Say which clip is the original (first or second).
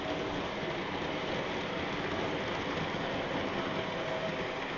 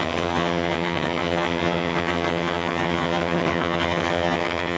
first